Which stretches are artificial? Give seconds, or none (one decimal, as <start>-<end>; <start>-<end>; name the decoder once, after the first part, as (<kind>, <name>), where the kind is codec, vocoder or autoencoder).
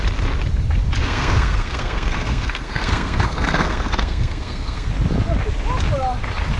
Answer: 1.0-4.9 (codec, SNAC)